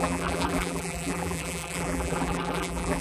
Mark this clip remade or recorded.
remade